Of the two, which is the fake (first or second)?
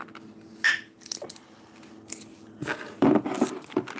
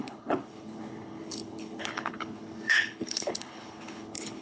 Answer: second